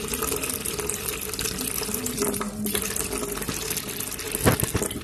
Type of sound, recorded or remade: recorded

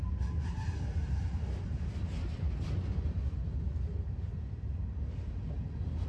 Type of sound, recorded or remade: recorded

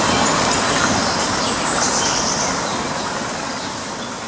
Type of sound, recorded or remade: recorded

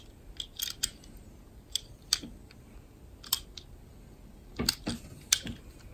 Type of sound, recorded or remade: recorded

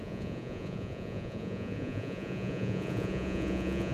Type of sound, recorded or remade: remade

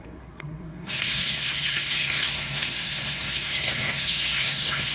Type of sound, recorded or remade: remade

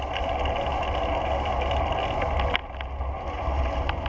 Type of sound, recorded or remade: recorded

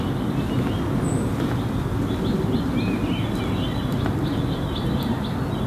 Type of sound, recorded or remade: recorded